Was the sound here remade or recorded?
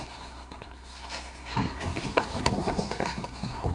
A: remade